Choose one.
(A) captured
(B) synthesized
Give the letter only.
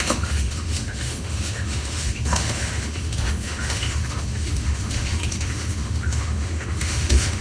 B